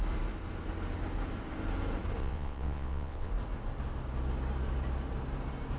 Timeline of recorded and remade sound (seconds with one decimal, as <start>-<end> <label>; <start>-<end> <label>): 0.0-2.2 recorded; 2.2-3.3 remade; 3.3-5.8 recorded